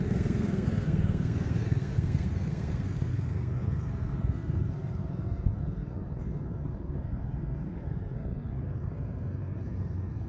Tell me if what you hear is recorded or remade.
remade